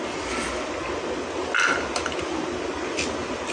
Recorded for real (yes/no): yes